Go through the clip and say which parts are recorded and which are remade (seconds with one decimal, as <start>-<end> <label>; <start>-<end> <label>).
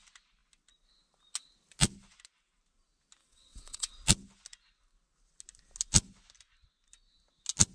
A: 0.0-3.2 recorded; 3.2-3.9 remade; 3.9-7.7 recorded